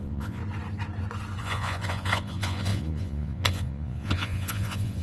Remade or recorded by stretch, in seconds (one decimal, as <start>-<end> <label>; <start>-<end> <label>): 0.0-0.4 remade; 0.4-1.4 recorded; 1.4-5.0 remade